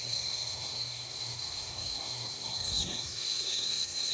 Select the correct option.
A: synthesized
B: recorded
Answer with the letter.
A